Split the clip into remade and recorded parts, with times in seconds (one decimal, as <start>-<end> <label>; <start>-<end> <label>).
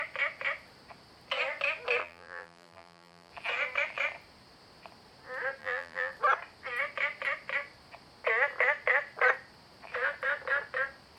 0.0-2.0 recorded; 2.0-3.3 remade; 3.3-5.6 recorded; 5.6-6.1 remade; 6.1-11.2 recorded